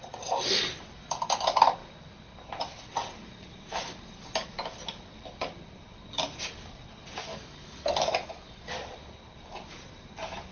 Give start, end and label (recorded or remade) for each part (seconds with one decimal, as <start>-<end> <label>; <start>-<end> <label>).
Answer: 0.0-7.3 recorded; 7.3-8.7 remade; 8.7-10.5 recorded